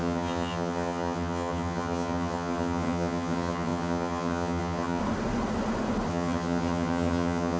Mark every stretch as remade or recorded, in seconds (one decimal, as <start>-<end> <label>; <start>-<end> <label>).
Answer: 0.0-5.0 remade; 5.0-6.1 recorded; 6.1-7.6 remade